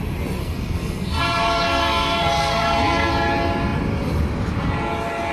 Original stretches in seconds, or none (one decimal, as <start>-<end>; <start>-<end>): 0.0-0.4; 3.1-5.3